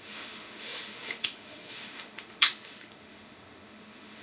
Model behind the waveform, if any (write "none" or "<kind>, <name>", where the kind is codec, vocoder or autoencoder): autoencoder, DAC-VAE